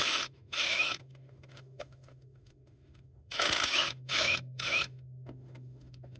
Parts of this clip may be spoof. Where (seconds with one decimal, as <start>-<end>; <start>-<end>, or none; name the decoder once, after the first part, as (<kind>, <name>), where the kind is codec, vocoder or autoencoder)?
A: 0.0-6.2 (autoencoder, DAC-VAE)